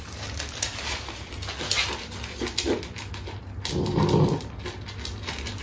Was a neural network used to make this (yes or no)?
no